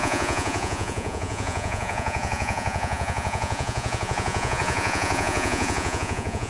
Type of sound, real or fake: fake